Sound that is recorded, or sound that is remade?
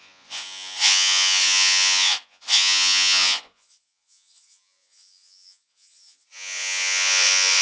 remade